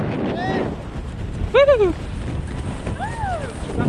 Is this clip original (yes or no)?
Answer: yes